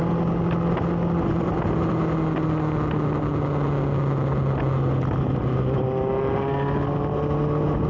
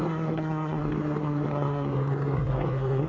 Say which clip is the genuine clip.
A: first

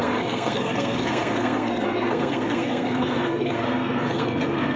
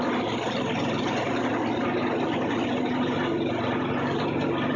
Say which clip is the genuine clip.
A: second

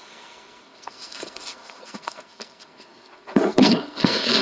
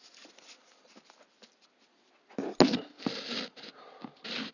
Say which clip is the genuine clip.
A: second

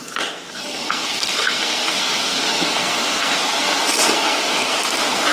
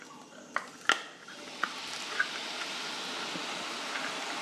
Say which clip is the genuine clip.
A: second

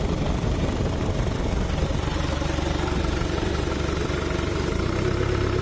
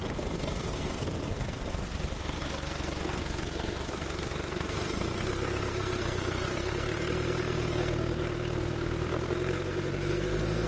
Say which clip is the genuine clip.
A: first